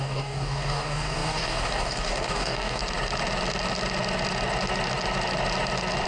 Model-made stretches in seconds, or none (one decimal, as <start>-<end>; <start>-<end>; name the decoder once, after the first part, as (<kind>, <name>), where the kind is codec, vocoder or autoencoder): 0.0-2.8 (codec, DAC)